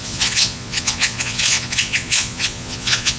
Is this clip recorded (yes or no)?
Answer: no